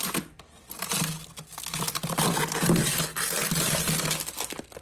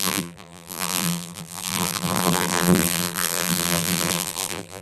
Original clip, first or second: first